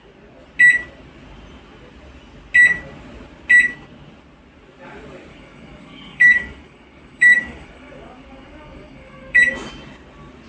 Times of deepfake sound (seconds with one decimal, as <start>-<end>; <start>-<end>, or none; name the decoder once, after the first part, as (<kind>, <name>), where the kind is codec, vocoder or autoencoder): 5.3-9.4 (codec, DAC)